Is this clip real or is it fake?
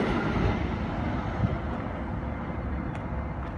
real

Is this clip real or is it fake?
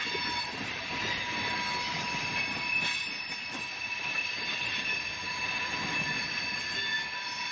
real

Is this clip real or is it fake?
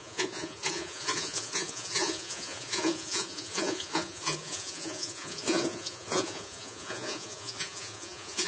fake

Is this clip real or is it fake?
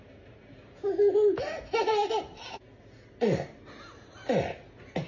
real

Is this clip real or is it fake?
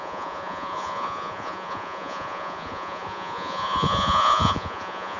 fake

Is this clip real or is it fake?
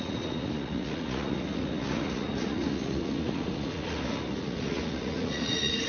fake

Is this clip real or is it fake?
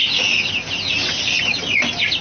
real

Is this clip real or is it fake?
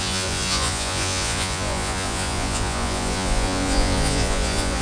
fake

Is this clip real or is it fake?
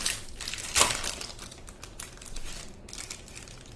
real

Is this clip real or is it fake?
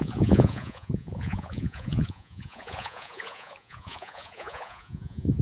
fake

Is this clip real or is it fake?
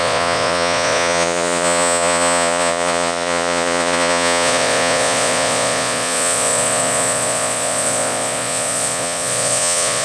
fake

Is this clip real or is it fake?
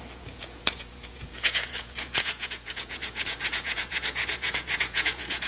fake